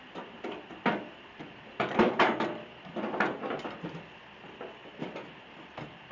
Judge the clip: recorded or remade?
remade